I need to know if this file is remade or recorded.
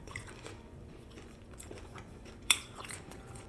remade